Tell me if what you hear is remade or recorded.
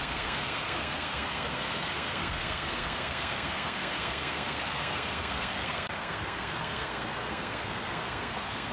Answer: remade